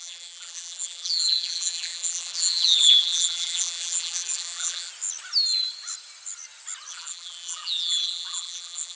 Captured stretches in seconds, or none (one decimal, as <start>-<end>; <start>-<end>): 4.9-6.9